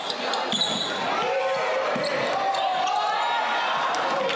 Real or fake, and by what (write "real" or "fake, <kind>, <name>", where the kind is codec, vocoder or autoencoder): real